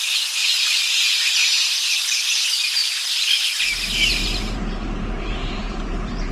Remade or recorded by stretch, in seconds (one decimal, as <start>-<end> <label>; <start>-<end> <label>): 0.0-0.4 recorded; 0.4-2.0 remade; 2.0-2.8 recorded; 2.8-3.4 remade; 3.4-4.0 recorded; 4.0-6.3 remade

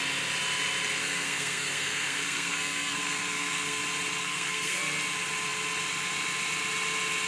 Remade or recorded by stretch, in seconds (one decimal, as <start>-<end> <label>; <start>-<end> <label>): 0.0-1.0 recorded; 1.0-3.8 remade; 3.8-4.2 recorded; 4.2-4.8 remade; 4.8-7.3 recorded

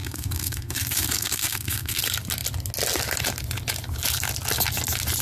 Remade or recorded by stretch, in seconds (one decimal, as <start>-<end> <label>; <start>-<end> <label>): 0.0-2.0 remade; 2.0-5.2 recorded

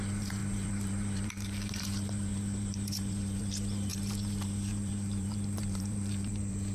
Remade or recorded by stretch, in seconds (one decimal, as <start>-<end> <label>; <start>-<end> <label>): 0.0-6.7 remade

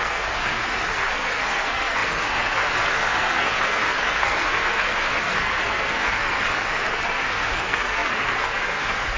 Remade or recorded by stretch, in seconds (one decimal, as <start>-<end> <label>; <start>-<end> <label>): 0.0-9.2 remade